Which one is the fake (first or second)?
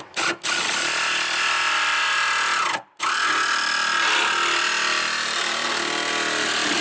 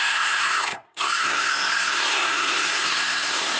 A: second